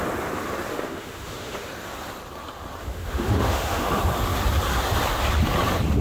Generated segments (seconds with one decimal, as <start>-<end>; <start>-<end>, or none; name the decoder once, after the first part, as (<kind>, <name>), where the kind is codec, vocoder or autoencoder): 0.7-1.7 (autoencoder, DAC-VAE); 2.8-3.9